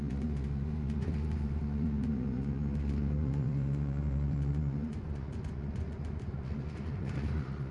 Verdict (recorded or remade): remade